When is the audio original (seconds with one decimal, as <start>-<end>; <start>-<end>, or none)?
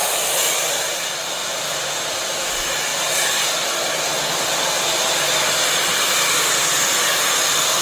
0.0-1.4; 2.4-7.8